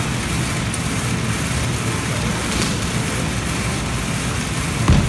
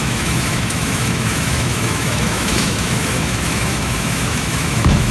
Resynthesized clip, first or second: second